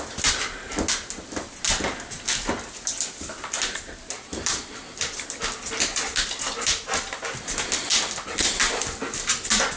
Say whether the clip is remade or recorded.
recorded